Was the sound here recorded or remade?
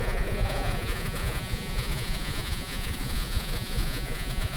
remade